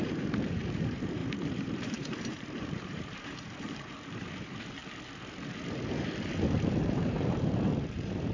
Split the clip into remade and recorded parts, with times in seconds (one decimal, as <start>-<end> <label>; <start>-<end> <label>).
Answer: 0.0-4.8 remade; 4.8-6.8 recorded; 6.8-8.3 remade